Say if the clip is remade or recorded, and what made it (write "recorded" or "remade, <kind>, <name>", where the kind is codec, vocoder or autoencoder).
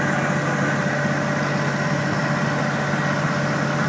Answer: recorded